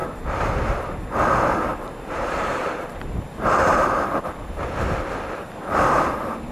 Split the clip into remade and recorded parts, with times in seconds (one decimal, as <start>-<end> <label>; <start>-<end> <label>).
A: 0.0-0.6 remade; 0.6-1.7 recorded; 1.7-4.2 remade; 4.2-6.5 recorded